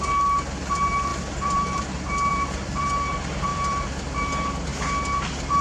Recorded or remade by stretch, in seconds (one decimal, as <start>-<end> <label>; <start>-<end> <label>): 0.0-1.1 recorded; 1.1-1.8 remade; 1.8-2.3 recorded; 2.3-2.9 remade; 2.9-3.5 recorded; 3.5-4.3 remade; 4.3-5.6 recorded